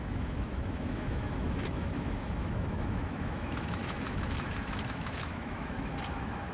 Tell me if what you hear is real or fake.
fake